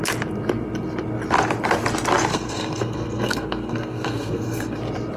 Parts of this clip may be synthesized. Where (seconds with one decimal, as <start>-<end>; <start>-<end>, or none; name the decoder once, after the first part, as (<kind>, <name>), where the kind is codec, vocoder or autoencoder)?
2.3-4.8 (codec, SNAC)